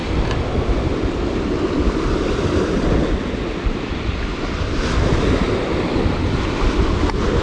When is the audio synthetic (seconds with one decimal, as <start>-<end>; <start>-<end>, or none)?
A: none